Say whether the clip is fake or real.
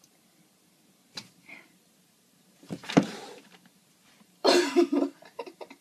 fake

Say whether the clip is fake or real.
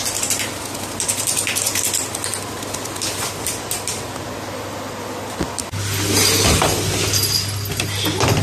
real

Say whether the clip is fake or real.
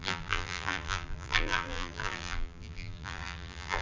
fake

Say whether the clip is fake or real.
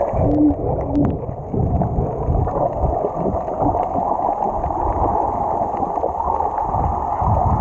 real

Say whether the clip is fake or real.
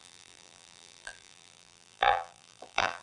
fake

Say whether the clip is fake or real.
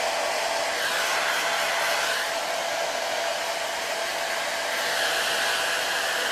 real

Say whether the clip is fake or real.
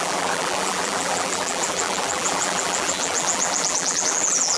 fake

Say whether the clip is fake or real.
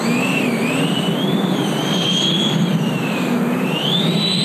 real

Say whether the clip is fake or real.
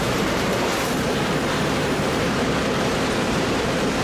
fake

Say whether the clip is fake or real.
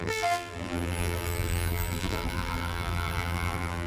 fake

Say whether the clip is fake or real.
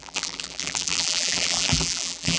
fake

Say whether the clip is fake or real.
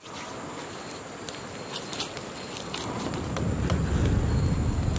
real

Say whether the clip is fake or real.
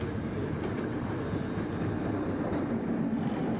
real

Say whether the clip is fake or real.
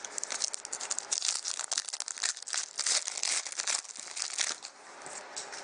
real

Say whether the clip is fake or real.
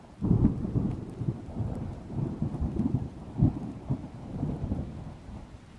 fake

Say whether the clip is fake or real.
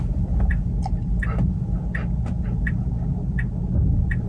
real